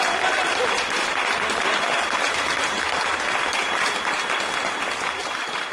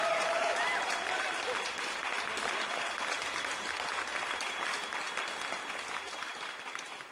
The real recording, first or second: first